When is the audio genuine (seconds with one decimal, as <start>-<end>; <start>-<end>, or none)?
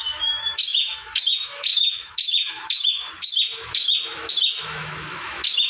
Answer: none